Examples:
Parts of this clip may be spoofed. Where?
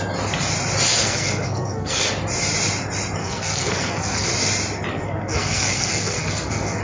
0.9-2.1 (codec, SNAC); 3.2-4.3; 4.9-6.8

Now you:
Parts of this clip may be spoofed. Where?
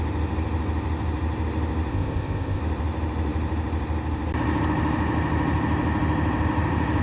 1.9-2.6 (codec, ZipCodec)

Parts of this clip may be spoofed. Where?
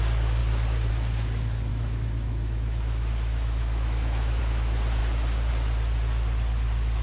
1.7-4.4 (autoencoder, DAC-VAE)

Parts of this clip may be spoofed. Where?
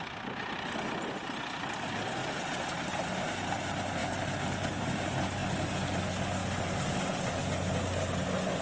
none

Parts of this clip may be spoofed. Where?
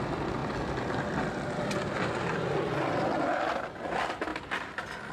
none